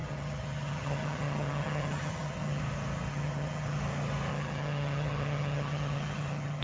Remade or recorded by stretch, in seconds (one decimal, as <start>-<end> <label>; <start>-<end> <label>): 0.0-2.6 remade; 2.6-3.1 recorded; 3.1-3.8 remade; 3.8-4.3 recorded; 4.3-6.6 remade